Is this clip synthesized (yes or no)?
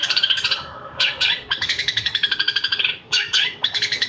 yes